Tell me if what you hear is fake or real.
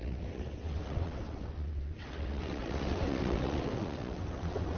fake